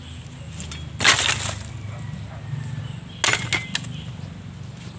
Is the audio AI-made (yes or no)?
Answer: no